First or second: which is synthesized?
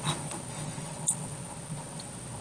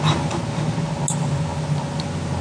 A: first